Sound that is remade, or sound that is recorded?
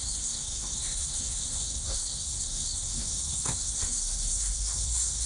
remade